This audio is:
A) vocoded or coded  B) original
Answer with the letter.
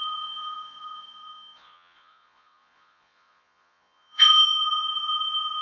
A